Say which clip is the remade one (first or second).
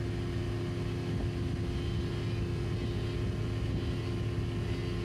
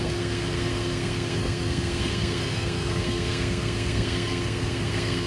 second